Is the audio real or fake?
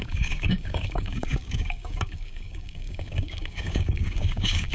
fake